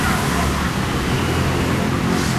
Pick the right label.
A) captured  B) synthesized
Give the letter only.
A